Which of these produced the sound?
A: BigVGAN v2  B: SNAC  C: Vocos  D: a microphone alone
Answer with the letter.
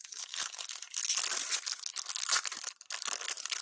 D